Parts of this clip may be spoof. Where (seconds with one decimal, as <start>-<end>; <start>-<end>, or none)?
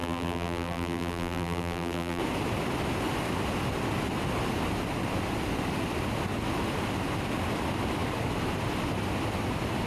0.0-2.2